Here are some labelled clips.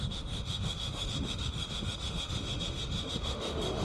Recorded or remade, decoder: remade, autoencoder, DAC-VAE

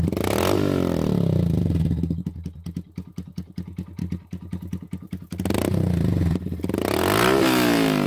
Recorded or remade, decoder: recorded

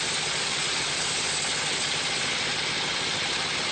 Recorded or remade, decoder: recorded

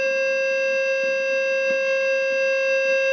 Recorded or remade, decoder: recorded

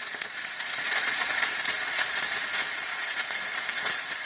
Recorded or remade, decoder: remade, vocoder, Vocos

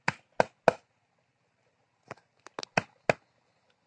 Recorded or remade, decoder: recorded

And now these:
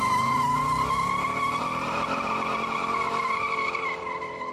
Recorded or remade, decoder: remade, vocoder, BigVGAN v2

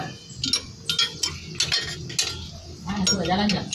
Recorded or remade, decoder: recorded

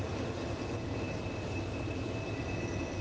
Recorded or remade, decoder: recorded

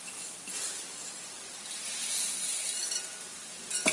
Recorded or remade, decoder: remade, vocoder, BigVGAN v2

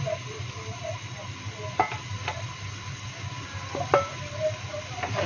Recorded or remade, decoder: recorded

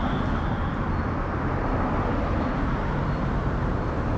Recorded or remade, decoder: recorded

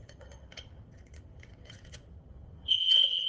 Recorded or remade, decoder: remade, vocoder, WaveNeXt